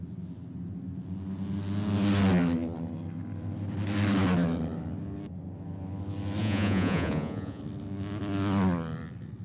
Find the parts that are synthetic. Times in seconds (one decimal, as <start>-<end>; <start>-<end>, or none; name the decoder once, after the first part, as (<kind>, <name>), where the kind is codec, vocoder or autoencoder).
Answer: 6.4-7.6 (vocoder, Vocos)